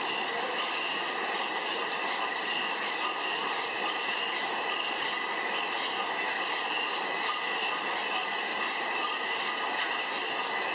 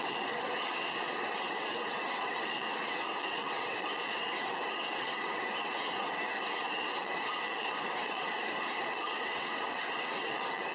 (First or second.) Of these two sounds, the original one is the first